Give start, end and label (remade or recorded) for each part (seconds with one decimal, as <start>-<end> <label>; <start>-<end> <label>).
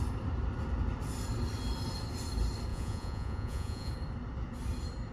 0.0-2.7 recorded; 2.7-3.9 remade; 3.9-5.1 recorded